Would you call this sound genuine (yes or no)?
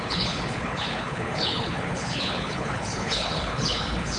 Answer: no